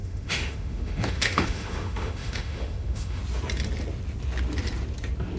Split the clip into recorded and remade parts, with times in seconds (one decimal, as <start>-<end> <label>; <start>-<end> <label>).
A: 0.0-3.2 remade; 3.2-5.4 recorded